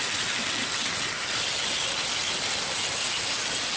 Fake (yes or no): no